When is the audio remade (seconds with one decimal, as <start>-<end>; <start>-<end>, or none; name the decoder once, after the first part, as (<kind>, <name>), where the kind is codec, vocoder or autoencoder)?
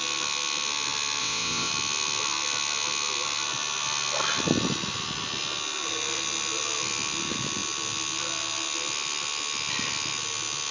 1.2-1.7 (vocoder, WaveNeXt)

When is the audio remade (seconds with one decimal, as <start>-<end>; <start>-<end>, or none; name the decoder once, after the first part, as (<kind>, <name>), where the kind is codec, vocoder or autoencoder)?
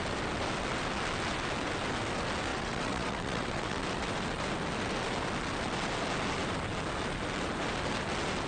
2.5-3.8 (vocoder, WaveNeXt)